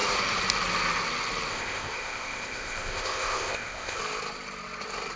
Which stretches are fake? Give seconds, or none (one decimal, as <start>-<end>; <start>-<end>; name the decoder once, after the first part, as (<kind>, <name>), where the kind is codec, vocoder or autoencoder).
1.5-4.0 (codec, ZipCodec)